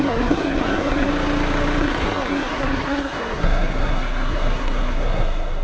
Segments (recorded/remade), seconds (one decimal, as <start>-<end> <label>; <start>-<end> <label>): 0.0-1.1 remade; 1.1-1.8 recorded; 1.8-5.6 remade